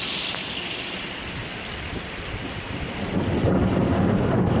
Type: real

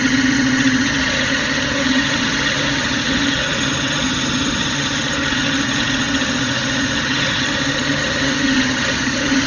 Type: fake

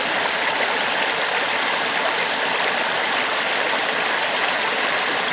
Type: real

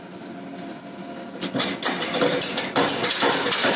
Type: real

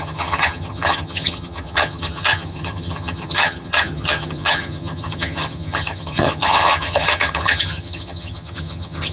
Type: fake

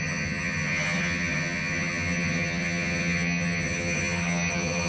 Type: fake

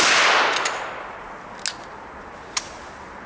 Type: real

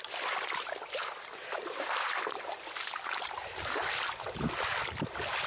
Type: real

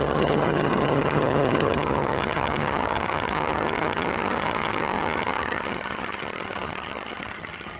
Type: fake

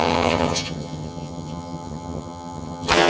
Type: fake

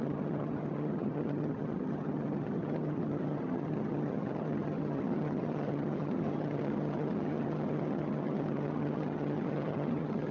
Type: fake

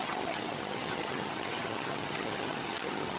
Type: fake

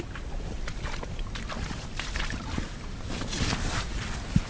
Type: real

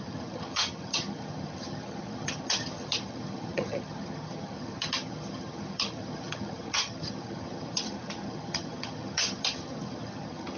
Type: fake